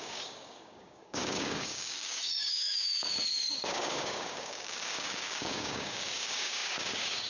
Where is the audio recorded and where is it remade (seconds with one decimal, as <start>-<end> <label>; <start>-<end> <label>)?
0.0-7.3 remade